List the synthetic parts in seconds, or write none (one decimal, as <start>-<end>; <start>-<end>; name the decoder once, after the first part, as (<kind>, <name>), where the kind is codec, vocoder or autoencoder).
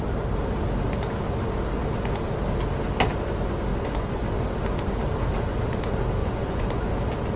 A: 3.7-4.3 (vocoder, Vocos); 6.2-6.9